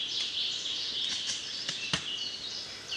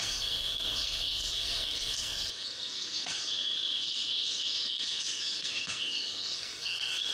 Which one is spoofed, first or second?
second